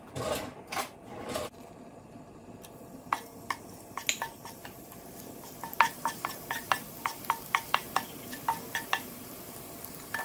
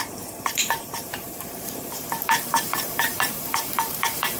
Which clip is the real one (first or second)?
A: first